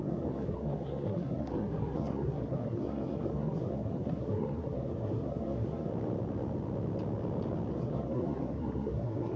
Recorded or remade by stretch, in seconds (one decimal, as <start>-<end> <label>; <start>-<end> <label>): 0.0-5.9 remade; 5.9-7.7 recorded; 7.7-9.4 remade